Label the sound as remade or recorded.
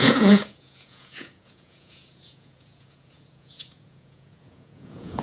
remade